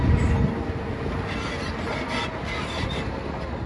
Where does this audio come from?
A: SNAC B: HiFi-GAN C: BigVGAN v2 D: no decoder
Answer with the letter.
D